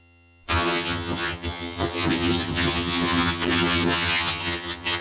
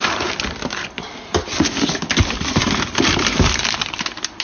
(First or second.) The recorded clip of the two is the second